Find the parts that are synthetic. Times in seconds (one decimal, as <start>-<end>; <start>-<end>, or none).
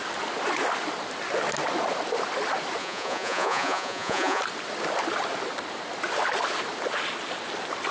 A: 2.8-4.4